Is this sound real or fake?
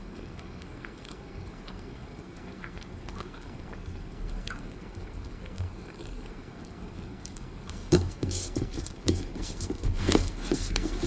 fake